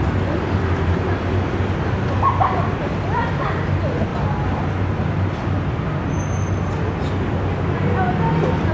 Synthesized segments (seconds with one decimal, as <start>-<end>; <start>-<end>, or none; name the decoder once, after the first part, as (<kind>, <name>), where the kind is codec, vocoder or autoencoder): none